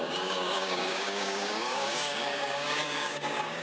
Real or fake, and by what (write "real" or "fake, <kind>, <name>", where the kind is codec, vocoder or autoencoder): fake, codec, DAC